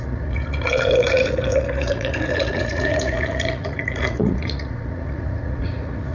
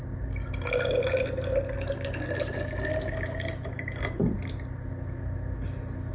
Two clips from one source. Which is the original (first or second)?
second